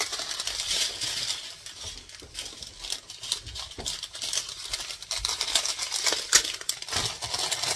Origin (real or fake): real